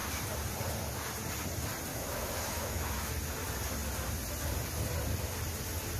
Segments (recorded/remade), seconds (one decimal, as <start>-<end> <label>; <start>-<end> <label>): 0.0-1.9 recorded; 1.9-3.1 remade; 3.1-6.0 recorded